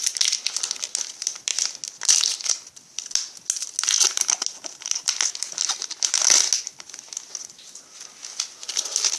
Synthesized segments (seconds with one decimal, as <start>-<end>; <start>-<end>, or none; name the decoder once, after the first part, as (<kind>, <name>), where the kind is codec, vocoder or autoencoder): none